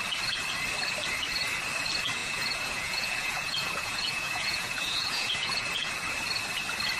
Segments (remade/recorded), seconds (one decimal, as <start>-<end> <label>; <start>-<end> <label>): 0.0-2.2 recorded; 2.2-5.9 remade; 5.9-7.0 recorded